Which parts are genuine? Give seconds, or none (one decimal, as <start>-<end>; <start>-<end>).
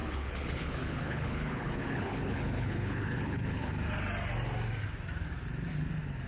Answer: 3.7-6.3